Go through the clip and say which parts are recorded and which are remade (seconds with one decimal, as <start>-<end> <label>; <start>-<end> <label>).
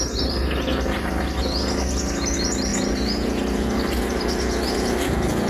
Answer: 0.0-5.5 recorded